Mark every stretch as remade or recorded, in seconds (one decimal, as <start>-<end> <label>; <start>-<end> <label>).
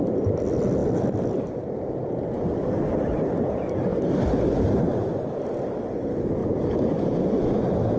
0.0-3.9 recorded; 3.9-5.2 remade; 5.2-6.4 recorded; 6.4-7.0 remade; 7.0-8.0 recorded